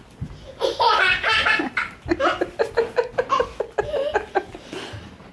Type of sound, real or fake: real